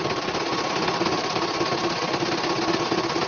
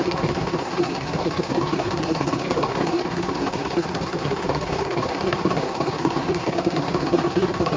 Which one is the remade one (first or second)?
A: second